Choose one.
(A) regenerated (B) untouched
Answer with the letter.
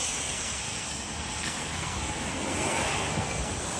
A